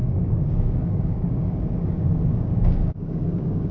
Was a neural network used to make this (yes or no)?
yes